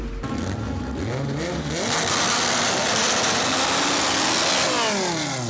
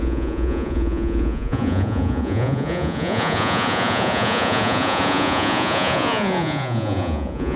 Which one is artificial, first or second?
second